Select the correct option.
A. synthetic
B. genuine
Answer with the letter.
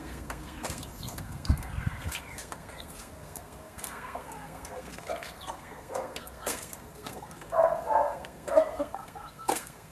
A